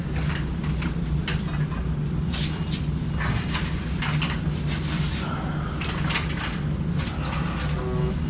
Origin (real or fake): real